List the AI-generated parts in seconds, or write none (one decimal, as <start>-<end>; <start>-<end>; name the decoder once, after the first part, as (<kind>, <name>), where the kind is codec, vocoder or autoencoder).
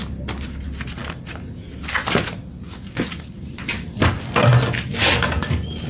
none